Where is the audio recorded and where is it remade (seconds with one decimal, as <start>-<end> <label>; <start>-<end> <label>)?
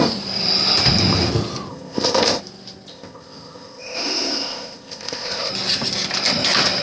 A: 0.0-1.7 recorded; 1.7-2.4 remade; 2.4-2.9 recorded; 2.9-5.5 remade; 5.5-6.8 recorded